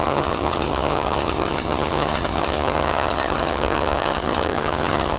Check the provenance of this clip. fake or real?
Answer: fake